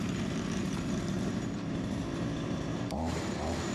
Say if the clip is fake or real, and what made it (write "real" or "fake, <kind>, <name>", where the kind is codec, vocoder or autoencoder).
fake, vocoder, BigVGAN v2